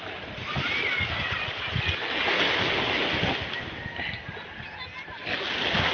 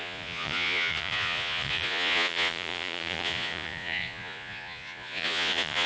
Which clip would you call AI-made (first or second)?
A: second